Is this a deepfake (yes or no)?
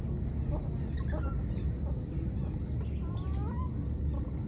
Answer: no